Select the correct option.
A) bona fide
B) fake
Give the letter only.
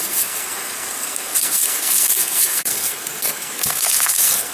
B